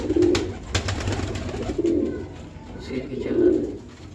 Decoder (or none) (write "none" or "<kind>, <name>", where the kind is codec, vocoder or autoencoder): none